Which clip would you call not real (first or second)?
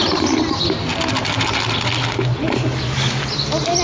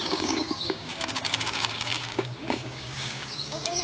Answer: second